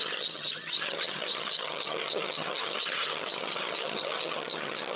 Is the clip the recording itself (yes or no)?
no